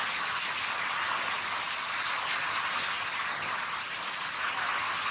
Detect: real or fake real